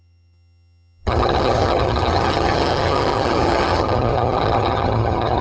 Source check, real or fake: fake